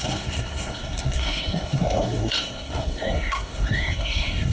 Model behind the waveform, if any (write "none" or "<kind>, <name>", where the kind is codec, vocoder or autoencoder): codec, SNAC